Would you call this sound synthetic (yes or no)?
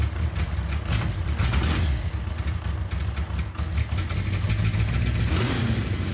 no